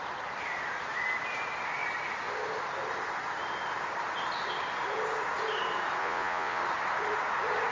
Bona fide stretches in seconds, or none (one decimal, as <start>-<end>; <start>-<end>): 0.0-6.0; 6.6-7.7